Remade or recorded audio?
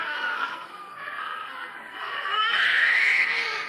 remade